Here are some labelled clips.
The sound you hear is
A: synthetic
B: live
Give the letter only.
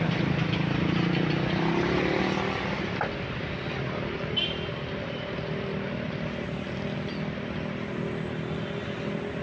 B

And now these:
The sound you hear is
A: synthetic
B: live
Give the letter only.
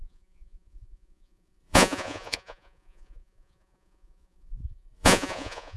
A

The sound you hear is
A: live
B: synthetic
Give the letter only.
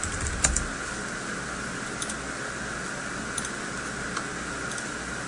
A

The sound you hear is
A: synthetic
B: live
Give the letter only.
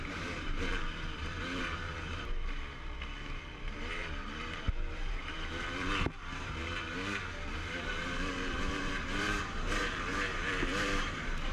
A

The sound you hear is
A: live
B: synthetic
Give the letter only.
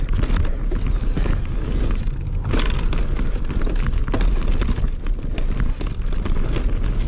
A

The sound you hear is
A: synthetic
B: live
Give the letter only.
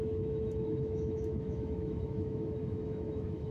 A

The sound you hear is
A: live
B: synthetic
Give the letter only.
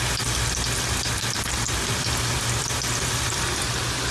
A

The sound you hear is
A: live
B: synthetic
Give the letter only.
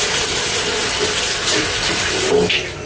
A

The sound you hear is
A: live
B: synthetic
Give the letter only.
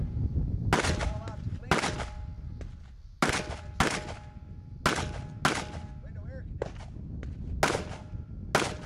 A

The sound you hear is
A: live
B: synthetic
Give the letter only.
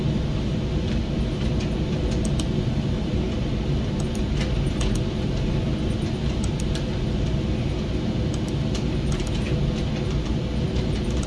A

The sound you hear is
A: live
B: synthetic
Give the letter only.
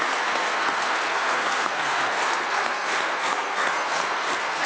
B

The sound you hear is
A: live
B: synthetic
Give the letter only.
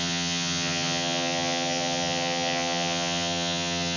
B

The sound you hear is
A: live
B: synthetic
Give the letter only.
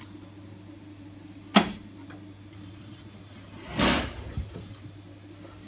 A